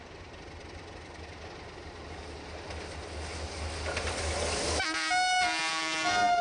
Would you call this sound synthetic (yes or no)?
no